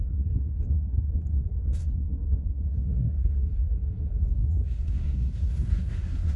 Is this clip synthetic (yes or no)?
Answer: yes